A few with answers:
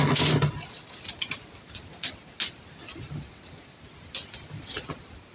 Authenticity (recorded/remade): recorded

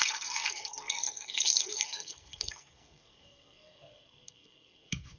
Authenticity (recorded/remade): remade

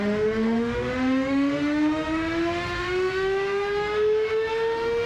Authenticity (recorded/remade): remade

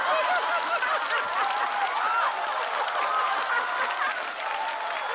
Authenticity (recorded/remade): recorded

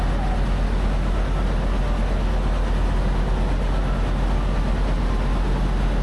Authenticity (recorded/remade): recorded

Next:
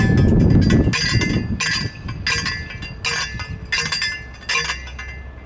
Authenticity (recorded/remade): recorded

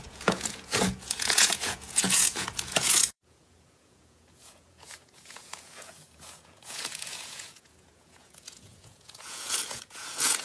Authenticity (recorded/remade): remade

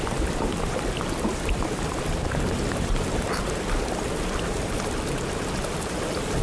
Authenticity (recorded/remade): recorded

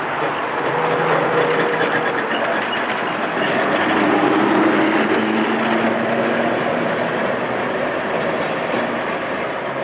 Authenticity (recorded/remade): recorded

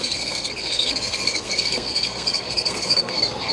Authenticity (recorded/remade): remade